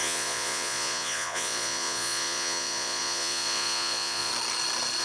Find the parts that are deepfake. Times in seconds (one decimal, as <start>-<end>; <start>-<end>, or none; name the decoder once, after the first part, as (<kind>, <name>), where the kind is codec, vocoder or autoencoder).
0.0-4.3 (vocoder, Vocos)